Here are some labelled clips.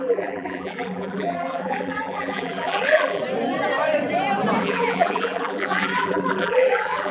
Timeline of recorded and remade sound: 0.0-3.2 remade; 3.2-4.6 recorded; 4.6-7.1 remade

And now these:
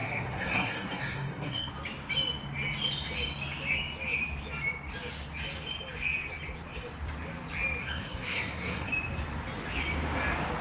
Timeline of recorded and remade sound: 0.0-1.7 remade; 1.7-7.8 recorded; 7.8-8.9 remade; 8.9-10.6 recorded

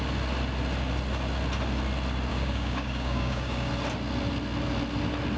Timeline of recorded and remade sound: 0.0-2.3 recorded; 2.3-3.7 remade; 3.7-5.4 recorded

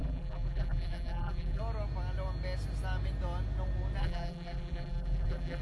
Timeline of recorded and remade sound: 0.0-1.6 remade; 1.6-4.0 recorded; 4.0-5.6 remade

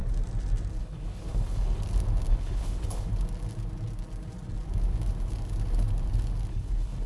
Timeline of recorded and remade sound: 0.0-0.8 recorded; 0.8-1.8 remade; 1.8-2.3 recorded; 2.3-3.1 remade; 3.1-6.5 recorded; 6.5-7.1 remade

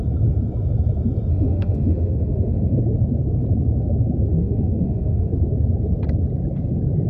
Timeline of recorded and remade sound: 0.0-1.3 recorded; 1.3-2.8 remade; 2.8-4.3 recorded; 4.3-5.3 remade; 5.3-7.1 recorded